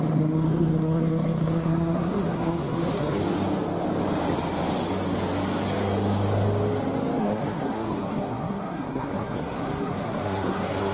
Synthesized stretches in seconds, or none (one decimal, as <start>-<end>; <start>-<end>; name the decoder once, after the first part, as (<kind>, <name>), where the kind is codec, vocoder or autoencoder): 0.0-3.2 (codec, SNAC); 7.2-10.9